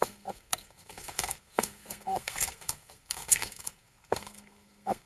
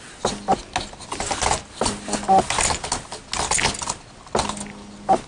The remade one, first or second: first